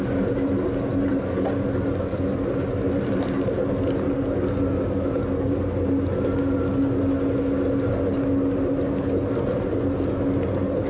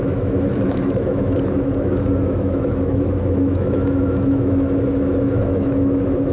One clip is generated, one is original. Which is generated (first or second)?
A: second